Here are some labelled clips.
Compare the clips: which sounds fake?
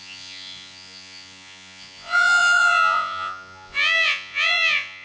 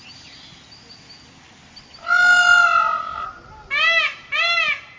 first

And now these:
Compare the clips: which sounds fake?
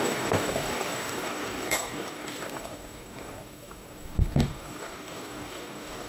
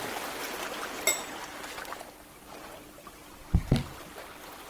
first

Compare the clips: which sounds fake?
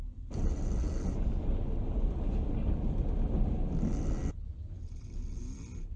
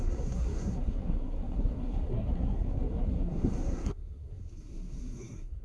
second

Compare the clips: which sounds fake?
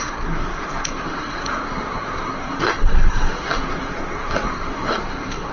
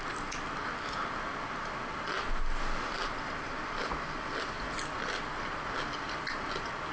first